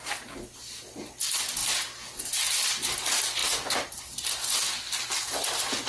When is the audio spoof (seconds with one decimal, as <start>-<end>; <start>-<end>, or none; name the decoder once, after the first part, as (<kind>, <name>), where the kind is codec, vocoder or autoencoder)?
none